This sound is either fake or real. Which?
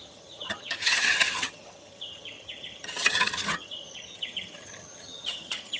fake